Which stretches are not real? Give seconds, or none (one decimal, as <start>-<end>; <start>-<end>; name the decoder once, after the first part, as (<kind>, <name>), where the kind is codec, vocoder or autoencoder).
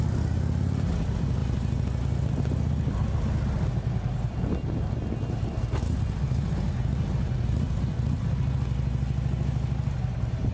none